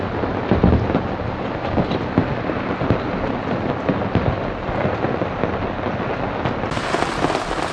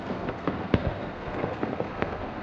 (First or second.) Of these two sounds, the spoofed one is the second